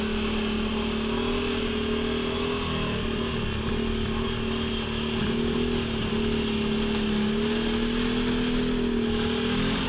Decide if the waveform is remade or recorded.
recorded